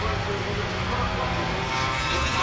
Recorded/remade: recorded